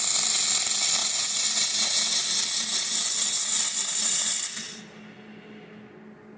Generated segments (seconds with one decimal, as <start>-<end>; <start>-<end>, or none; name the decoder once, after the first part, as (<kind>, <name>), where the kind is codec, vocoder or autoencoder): 1.0-4.8 (vocoder, WaveNeXt)